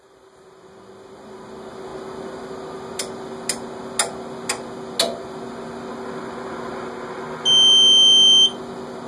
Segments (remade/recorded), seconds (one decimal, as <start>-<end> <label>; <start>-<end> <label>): 0.0-9.1 recorded